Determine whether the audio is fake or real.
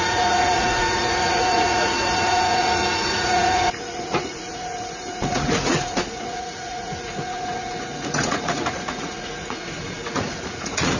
fake